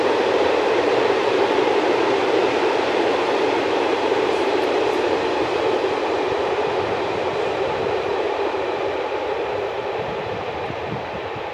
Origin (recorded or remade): remade